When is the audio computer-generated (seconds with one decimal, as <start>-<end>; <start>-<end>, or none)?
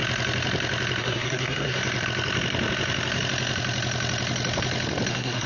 1.0-1.8; 5.1-5.5